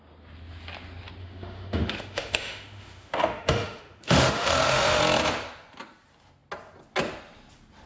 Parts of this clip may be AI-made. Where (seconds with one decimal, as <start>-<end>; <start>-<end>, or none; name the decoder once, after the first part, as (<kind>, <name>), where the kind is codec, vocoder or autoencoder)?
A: 1.2-5.0 (autoencoder, DAC-VAE)